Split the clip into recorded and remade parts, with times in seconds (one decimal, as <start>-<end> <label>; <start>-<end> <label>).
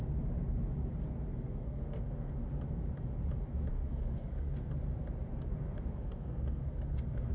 0.0-1.3 recorded; 1.3-2.3 remade; 2.3-3.7 recorded; 3.7-4.7 remade; 4.7-5.3 recorded; 5.3-7.3 remade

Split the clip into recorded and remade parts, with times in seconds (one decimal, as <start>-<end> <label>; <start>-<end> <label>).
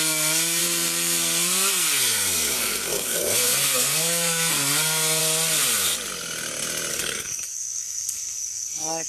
0.0-5.2 remade; 5.2-6.9 recorded; 6.9-9.1 remade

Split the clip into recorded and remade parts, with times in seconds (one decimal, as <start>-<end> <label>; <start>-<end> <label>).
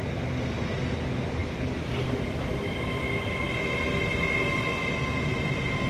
0.0-5.9 recorded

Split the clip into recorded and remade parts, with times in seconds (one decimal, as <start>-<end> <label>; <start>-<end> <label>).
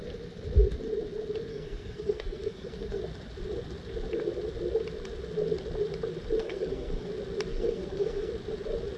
0.0-1.5 recorded; 1.5-3.0 remade; 3.0-6.4 recorded; 6.4-7.1 remade; 7.1-7.5 recorded; 7.5-8.3 remade; 8.3-9.0 recorded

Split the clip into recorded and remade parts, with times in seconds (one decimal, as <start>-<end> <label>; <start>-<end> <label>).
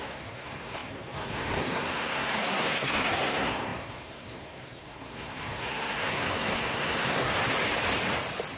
0.0-7.3 remade; 7.3-8.6 recorded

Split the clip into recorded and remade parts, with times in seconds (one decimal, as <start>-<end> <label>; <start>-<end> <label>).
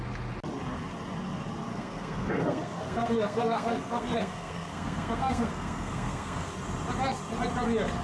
0.0-1.7 recorded; 1.7-6.5 remade; 6.5-8.0 recorded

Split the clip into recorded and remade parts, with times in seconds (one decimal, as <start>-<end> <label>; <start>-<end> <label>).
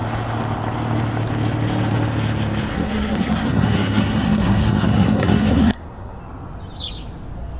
0.0-2.7 recorded; 2.7-6.2 remade; 6.2-7.6 recorded